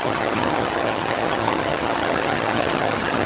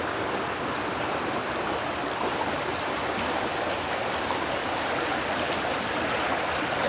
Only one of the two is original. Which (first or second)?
second